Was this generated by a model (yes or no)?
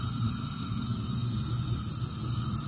no